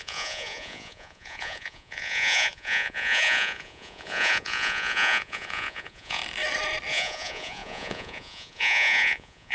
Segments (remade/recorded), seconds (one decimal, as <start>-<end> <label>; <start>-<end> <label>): 0.0-6.2 remade; 6.2-6.9 recorded; 6.9-9.5 remade